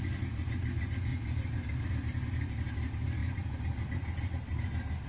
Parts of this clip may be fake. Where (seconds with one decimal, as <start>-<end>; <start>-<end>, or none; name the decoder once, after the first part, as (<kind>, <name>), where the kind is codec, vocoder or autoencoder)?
1.1-1.8 (vocoder, BigVGAN v2); 3.2-4.6